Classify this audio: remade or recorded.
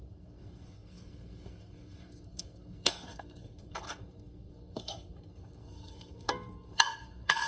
remade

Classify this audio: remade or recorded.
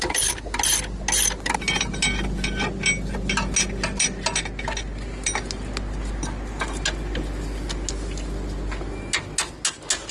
recorded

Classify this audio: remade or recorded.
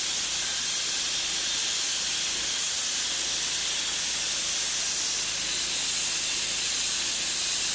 recorded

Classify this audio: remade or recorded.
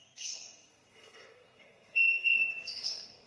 remade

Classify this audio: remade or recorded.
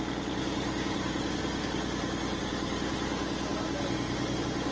recorded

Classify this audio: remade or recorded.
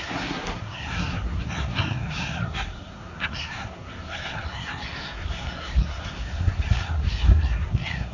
remade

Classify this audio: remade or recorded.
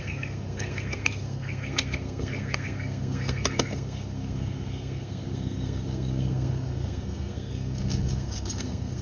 remade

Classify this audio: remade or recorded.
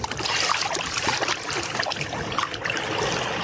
recorded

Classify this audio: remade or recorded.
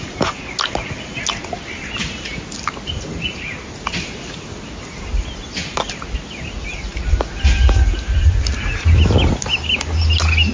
recorded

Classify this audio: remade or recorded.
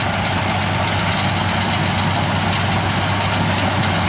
recorded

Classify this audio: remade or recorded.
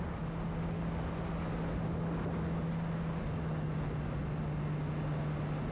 recorded